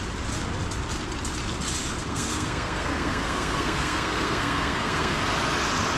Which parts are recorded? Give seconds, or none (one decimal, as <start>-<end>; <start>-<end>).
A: 0.0-2.0; 5.2-6.0